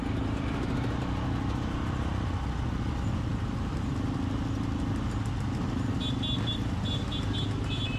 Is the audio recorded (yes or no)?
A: yes